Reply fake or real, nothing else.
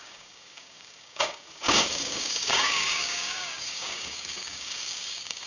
fake